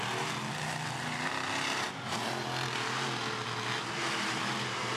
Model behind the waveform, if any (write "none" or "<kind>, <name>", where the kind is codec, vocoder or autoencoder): none